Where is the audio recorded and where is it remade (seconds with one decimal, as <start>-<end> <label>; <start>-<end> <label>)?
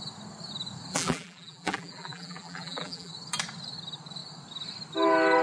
0.0-0.9 recorded; 0.9-3.1 remade; 3.1-5.4 recorded